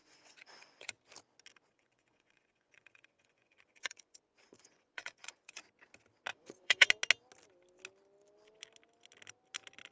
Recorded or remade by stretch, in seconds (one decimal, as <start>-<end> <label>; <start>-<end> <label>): 0.0-0.9 remade; 0.9-1.7 recorded; 1.7-5.6 remade; 5.6-6.3 recorded; 6.3-6.9 remade; 6.9-9.9 recorded